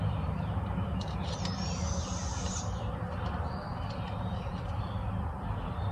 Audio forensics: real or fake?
fake